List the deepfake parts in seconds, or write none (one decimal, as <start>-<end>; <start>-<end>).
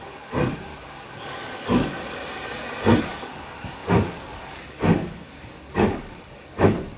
0.0-2.2; 3.0-7.0